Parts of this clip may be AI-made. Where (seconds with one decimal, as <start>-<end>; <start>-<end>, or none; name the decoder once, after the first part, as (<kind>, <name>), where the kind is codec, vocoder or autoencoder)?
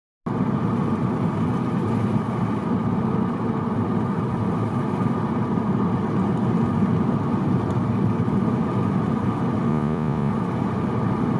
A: 9.7-10.3 (vocoder, Vocos)